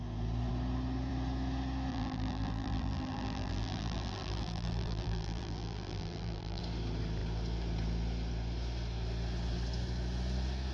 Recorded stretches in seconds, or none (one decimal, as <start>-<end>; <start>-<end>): 0.0-1.9; 6.6-10.7